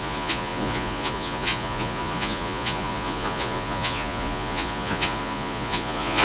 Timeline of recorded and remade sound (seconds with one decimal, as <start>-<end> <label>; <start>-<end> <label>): 0.0-6.2 remade